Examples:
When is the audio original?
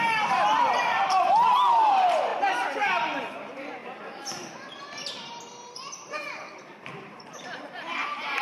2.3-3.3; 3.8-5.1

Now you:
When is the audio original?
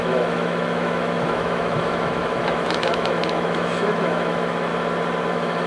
4.7-5.3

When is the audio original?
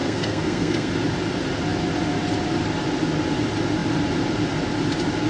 0.9-5.3